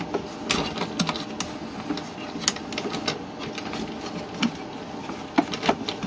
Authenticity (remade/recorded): recorded